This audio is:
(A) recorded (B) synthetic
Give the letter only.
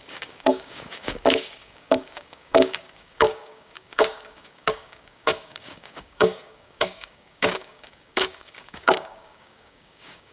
B